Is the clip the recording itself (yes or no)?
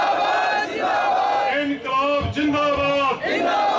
yes